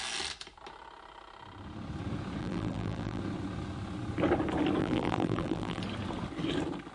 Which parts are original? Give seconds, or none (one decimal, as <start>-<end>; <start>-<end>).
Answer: 0.0-2.4; 3.2-4.8; 5.8-6.9